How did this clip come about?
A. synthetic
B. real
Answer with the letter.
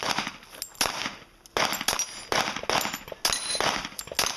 B